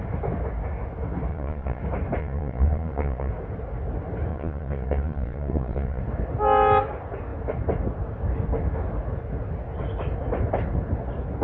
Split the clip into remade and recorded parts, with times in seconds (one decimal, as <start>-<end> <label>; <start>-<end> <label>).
0.0-1.3 recorded; 1.3-1.8 remade; 1.8-2.2 recorded; 2.2-3.3 remade; 3.3-4.3 recorded; 4.3-6.0 remade; 6.0-11.4 recorded